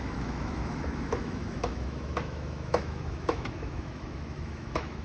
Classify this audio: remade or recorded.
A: remade